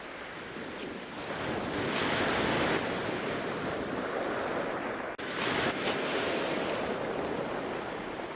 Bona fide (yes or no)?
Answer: yes